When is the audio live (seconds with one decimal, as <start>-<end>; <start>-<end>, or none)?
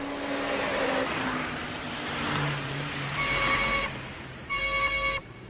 0.0-1.6; 4.6-5.5